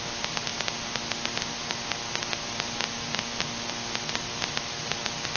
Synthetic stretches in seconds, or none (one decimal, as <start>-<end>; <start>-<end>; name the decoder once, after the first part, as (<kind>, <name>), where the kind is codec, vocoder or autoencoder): none